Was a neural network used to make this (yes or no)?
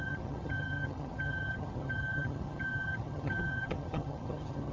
yes